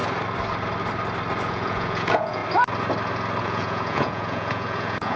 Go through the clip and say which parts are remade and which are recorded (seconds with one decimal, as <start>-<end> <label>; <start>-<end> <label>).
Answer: 0.0-1.5 recorded; 1.5-2.4 remade; 2.4-3.4 recorded; 3.4-5.2 remade